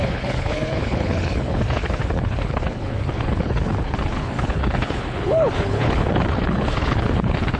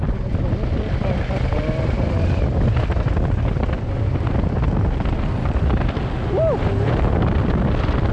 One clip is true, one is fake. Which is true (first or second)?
second